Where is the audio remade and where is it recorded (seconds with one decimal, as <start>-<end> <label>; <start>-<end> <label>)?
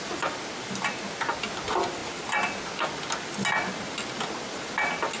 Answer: 0.0-5.2 recorded